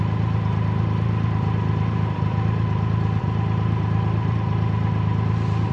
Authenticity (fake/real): real